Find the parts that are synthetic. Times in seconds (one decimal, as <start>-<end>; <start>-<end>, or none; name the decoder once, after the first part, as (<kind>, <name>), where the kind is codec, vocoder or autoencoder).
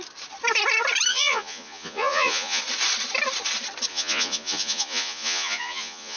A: 1.1-2.6 (vocoder, Vocos); 3.9-6.2